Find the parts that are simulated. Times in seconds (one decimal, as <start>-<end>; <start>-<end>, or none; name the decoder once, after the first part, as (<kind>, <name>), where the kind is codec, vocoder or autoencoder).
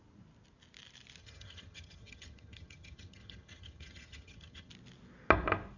1.2-4.7 (vocoder, HiFi-GAN)